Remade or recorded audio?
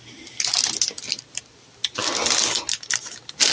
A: recorded